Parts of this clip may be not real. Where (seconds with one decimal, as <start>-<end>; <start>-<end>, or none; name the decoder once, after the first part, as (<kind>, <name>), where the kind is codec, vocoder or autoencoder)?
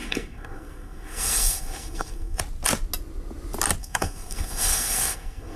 0.0-2.4 (codec, SNAC); 3.8-5.6